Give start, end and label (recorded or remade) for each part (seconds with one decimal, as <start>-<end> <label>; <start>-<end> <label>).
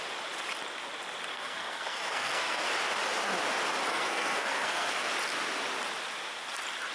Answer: 0.0-1.3 recorded; 1.3-2.6 remade; 2.6-3.9 recorded; 3.9-5.1 remade; 5.1-6.9 recorded